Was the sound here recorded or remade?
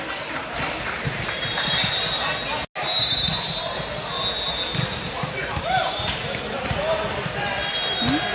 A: recorded